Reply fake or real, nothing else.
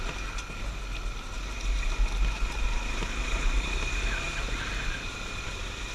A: real